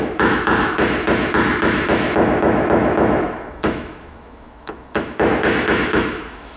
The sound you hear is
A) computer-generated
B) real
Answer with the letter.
A